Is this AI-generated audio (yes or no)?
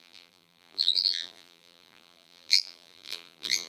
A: yes